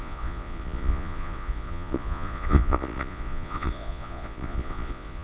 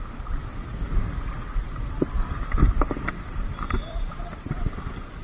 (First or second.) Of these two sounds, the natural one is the second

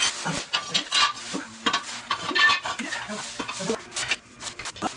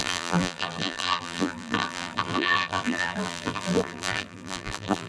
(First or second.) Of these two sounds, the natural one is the first